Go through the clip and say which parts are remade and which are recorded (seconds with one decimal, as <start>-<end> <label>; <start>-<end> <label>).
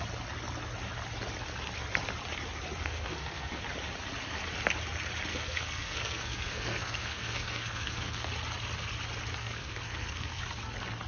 0.0-2.8 recorded; 2.8-3.6 remade; 3.6-5.3 recorded; 5.3-8.3 remade; 8.3-9.4 recorded; 9.4-10.4 remade; 10.4-11.1 recorded